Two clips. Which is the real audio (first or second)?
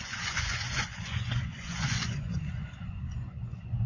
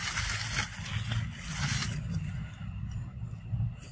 second